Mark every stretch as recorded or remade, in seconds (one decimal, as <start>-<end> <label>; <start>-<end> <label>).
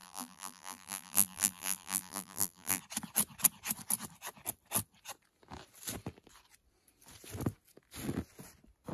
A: 0.0-2.8 remade; 2.8-8.9 recorded